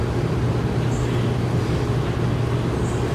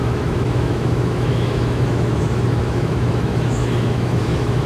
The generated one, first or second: second